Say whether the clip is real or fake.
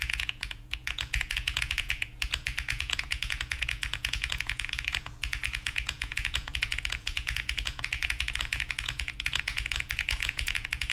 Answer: fake